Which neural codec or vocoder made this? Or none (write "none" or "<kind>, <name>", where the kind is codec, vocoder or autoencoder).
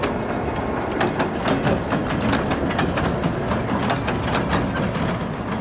none